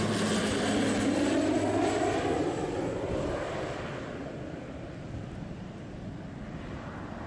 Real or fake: real